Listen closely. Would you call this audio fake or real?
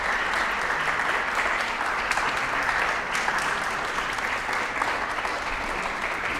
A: real